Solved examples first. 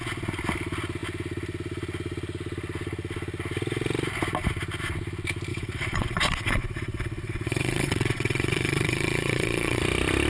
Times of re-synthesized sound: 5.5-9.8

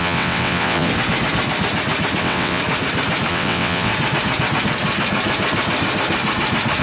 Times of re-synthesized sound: 0.0-0.9; 2.2-2.6; 3.3-3.9

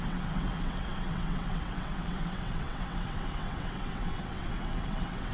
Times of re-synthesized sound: 0.0-5.3

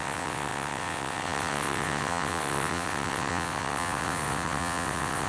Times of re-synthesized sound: 0.0-5.3

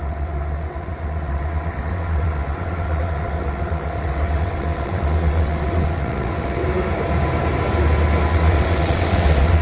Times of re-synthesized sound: 0.0-6.6; 8.3-9.6

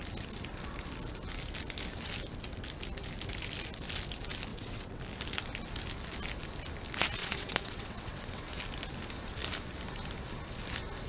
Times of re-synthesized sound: 4.5-5.0; 7.2-8.6

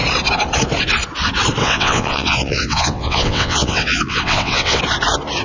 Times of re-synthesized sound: 1.6-4.8